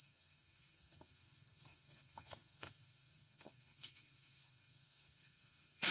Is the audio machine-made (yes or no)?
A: yes